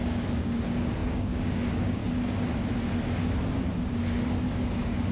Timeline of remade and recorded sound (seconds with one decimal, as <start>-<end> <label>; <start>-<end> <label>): 0.0-2.0 remade; 2.0-4.4 recorded; 4.4-5.1 remade